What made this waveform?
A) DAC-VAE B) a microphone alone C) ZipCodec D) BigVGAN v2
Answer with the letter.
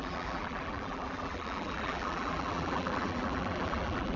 D